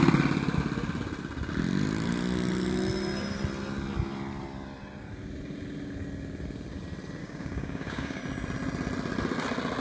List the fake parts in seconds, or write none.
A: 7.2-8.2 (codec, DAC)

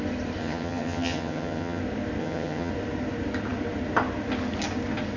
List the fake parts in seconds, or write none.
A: 0.4-1.8 (vocoder, HiFi-GAN); 2.2-2.7

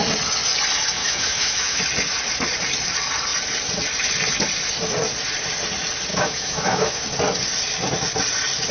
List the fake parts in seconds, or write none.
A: 1.0-1.8 (autoencoder, DAC-VAE); 6.1-7.0

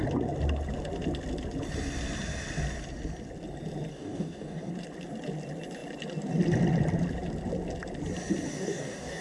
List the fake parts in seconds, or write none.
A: 3.9-4.7 (codec, DAC); 8.5-9.2